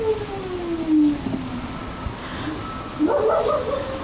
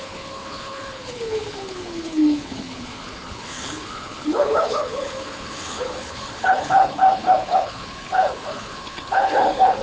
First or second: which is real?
first